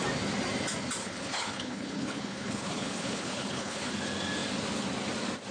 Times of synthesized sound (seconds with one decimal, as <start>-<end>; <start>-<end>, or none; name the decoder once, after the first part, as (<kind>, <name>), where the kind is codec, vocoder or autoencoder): 1.0-3.9 (codec, HILCodec)